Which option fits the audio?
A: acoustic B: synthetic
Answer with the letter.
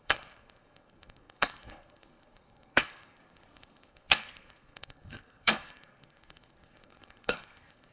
B